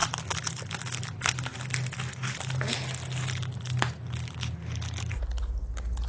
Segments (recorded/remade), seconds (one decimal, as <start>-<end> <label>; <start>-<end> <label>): 0.0-6.1 recorded